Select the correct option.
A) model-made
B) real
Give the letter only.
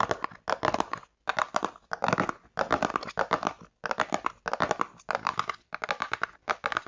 B